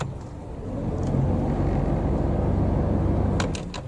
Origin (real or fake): real